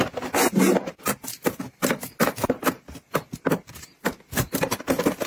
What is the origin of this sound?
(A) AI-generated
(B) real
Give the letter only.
B